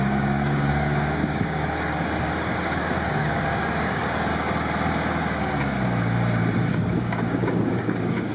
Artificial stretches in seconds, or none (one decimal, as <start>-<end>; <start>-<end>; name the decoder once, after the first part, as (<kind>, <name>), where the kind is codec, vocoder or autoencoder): 0.0-1.6 (codec, DAC); 2.2-4.3; 6.7-8.3